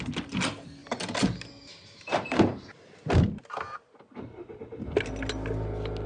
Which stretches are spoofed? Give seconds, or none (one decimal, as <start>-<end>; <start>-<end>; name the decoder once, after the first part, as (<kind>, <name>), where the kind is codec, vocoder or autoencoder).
none